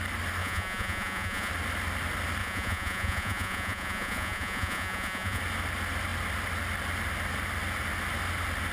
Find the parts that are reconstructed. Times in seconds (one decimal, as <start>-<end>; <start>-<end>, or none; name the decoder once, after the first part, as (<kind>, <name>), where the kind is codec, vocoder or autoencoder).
0.4-1.5 (vocoder, Vocos); 2.4-5.4